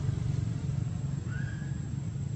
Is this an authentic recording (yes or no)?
yes